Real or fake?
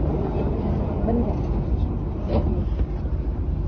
real